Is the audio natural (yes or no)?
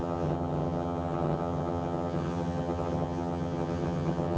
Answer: no